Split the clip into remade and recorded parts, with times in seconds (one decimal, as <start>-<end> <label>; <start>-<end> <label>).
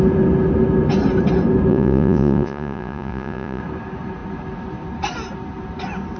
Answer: 0.0-1.7 recorded; 1.7-3.6 remade; 3.6-6.2 recorded